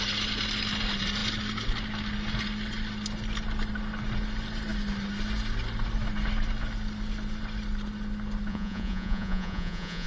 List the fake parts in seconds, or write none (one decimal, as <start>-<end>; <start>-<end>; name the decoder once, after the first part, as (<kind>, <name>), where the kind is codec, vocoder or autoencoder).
8.5-10.1 (vocoder, Vocos)